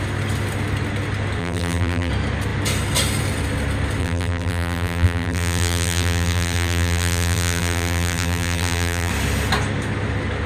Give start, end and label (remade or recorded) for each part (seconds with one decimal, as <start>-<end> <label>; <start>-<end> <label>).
0.0-1.4 recorded; 1.4-2.1 remade; 2.1-4.0 recorded; 4.0-9.1 remade; 9.1-10.5 recorded